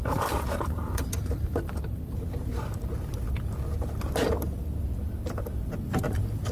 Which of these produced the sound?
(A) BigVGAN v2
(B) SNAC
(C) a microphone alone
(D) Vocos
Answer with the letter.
C